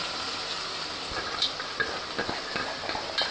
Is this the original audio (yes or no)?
yes